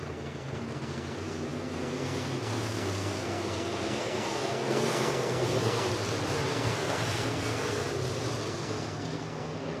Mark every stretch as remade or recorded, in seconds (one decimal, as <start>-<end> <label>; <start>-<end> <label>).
0.0-5.9 remade; 5.9-6.5 recorded; 6.5-7.8 remade; 7.8-8.4 recorded; 8.4-9.8 remade